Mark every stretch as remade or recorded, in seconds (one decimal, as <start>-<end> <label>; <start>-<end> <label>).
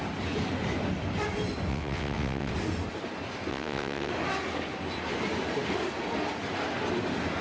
0.0-1.7 recorded; 1.7-2.5 remade; 2.5-3.5 recorded; 3.5-4.1 remade; 4.1-7.4 recorded